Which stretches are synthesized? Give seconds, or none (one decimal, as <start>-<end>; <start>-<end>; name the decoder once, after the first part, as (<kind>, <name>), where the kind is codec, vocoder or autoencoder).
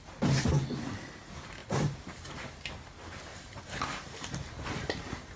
1.6-2.2 (vocoder, BigVGAN v2); 3.3-5.4